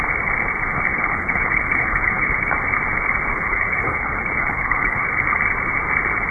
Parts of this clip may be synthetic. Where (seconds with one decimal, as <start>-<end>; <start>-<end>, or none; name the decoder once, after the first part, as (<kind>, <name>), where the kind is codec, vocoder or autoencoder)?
0.9-2.5 (codec, HILCodec); 3.3-5.1